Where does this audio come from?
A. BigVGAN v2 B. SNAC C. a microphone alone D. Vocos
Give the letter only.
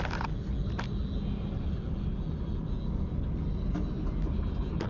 C